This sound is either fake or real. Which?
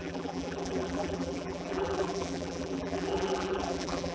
fake